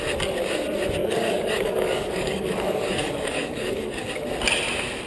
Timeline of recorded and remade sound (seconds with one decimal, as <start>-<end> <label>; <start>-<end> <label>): 0.0-1.0 recorded; 1.0-4.1 remade; 4.1-5.1 recorded